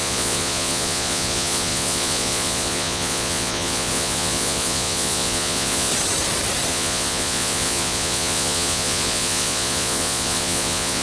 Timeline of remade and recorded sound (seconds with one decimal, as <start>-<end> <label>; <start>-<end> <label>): 0.0-5.9 remade; 5.9-6.7 recorded; 6.7-11.0 remade